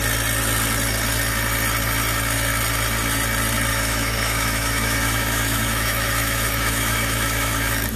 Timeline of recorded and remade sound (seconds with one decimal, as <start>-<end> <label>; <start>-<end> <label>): 0.0-3.7 recorded; 3.7-8.0 remade